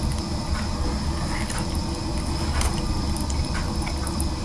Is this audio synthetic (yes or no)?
no